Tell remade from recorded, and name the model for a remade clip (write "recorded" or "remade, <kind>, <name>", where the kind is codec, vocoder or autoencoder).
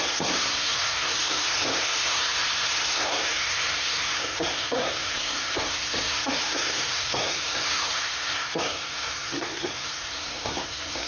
remade, codec, SNAC